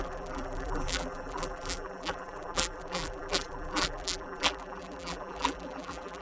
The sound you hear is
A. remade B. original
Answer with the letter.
A